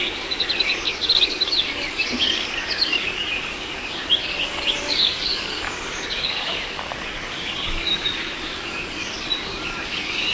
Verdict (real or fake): fake